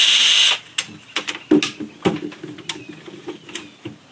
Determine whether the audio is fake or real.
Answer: real